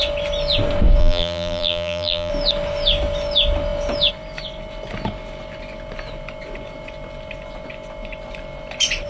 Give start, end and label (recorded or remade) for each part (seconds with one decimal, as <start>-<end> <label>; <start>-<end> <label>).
0.0-1.0 recorded; 1.0-2.3 remade; 2.3-9.1 recorded